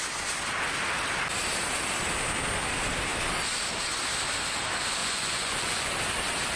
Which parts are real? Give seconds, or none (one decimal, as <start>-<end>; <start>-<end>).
0.0-5.0; 5.9-6.6